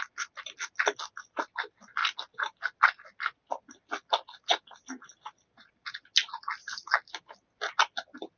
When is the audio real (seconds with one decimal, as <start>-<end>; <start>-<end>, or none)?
0.0-8.4